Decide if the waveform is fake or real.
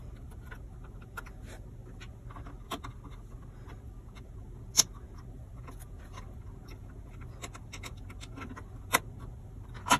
real